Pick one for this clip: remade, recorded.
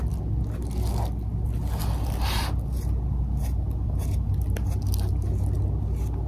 recorded